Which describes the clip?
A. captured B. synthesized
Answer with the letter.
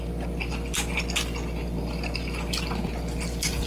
A